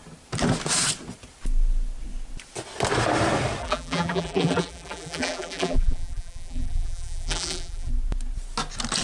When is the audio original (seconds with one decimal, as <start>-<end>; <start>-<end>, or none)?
0.0-3.6; 7.9-9.0